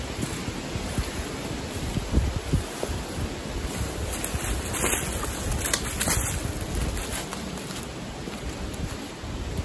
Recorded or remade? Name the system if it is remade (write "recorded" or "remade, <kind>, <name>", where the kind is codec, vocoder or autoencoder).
recorded